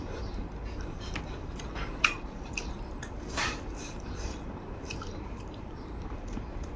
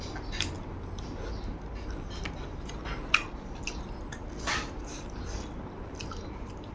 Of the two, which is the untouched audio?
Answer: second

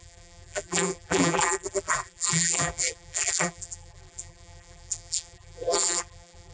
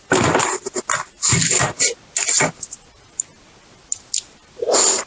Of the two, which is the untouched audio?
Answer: second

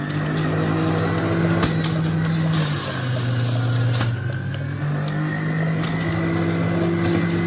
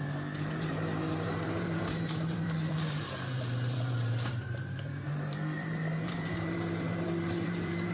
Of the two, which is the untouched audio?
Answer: first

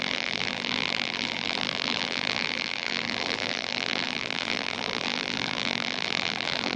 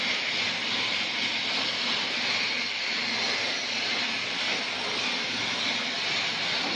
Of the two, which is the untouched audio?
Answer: second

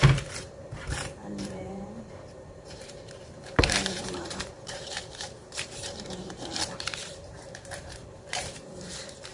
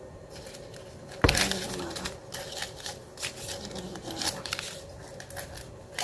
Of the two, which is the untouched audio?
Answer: second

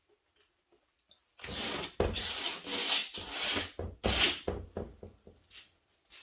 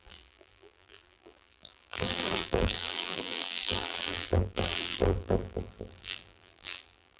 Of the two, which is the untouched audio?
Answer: first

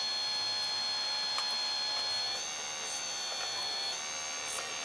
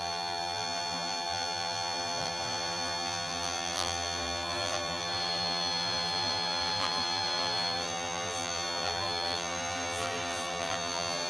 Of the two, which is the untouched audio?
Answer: first